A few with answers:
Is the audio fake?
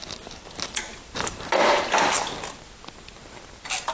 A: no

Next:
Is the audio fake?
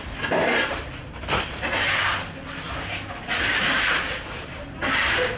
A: no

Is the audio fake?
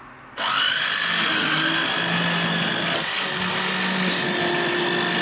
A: no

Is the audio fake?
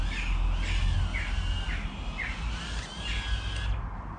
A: no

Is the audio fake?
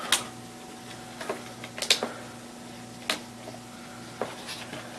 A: no